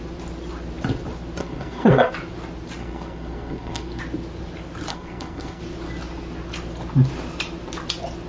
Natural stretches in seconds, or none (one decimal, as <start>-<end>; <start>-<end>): 0.0-1.4; 2.1-2.8; 4.0-4.9; 5.6-8.3